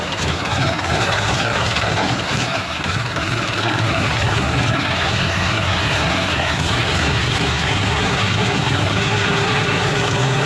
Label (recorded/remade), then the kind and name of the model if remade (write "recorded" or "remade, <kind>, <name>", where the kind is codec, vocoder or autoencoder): remade, codec, SNAC